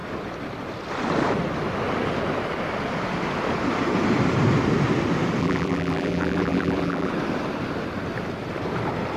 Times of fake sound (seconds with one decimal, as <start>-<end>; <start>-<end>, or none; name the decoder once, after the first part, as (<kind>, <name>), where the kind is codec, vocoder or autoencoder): 5.4-7.1 (vocoder, BigVGAN v2)